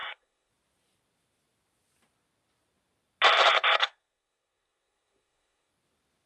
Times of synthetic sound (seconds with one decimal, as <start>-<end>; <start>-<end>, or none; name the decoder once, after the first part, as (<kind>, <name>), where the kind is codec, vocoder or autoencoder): 0.0-0.5 (codec, SNAC); 3.8-5.7